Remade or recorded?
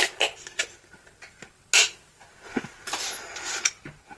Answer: recorded